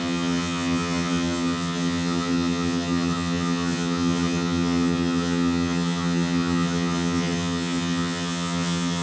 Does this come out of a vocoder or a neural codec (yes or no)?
yes